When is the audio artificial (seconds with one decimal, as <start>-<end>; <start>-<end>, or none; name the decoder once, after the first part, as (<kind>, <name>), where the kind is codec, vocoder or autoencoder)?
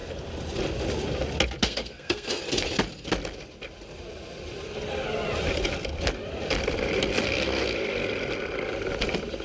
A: 1.6-2.4 (codec, SNAC)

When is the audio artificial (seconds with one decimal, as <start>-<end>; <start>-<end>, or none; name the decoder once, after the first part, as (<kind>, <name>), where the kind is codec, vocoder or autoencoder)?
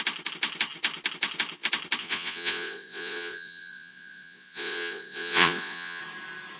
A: 2.0-6.0 (vocoder, Vocos)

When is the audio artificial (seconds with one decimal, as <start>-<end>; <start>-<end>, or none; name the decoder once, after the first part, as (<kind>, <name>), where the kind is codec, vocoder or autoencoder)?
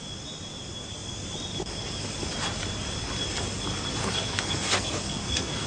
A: 4.0-5.7 (codec, SNAC)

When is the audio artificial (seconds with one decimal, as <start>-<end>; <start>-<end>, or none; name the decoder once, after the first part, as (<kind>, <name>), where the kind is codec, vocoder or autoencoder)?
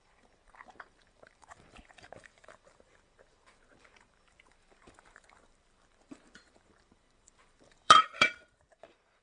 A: 0.0-9.2 (vocoder, BigVGAN v2)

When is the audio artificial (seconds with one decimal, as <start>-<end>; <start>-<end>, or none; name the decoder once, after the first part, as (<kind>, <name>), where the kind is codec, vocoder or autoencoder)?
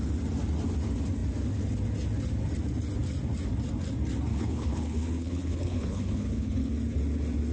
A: 4.3-6.7 (codec, HILCodec)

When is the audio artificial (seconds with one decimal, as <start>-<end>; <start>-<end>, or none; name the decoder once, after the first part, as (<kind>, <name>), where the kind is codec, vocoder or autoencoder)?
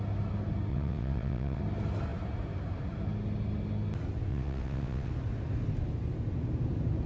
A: 0.7-1.6 (vocoder, WaveNeXt); 4.3-5.1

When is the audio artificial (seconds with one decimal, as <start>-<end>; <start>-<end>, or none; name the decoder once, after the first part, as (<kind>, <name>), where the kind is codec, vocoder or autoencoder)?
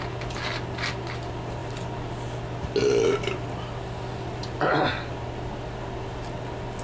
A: none